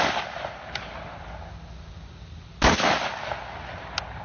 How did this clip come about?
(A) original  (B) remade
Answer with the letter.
A